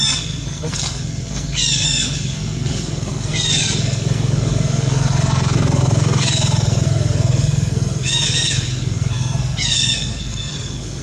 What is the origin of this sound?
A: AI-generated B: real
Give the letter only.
A